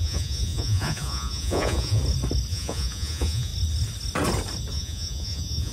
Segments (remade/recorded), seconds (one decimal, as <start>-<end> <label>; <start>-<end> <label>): 0.0-2.0 remade; 2.0-2.5 recorded; 2.5-3.5 remade; 3.5-4.7 recorded; 4.7-5.7 remade